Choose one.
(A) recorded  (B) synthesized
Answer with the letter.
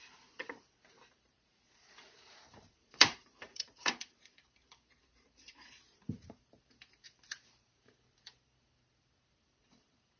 B